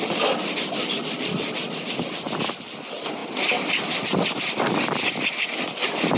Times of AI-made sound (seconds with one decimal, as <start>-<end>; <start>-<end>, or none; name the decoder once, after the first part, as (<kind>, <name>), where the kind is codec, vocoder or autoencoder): none